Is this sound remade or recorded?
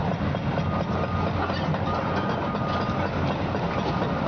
recorded